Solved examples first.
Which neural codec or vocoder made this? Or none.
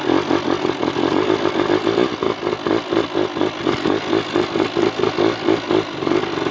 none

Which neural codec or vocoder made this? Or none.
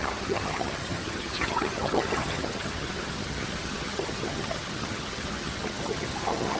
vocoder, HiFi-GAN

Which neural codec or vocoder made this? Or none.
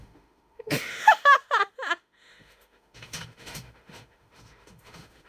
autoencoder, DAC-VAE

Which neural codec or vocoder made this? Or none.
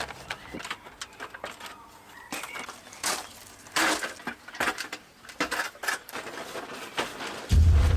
vocoder, BigVGAN v2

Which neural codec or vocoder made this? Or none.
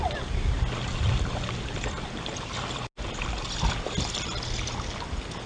none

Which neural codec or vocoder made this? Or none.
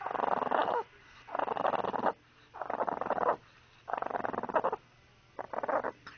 none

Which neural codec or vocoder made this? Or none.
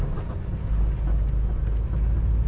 none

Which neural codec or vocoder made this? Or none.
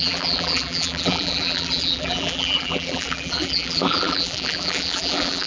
vocoder, BigVGAN v2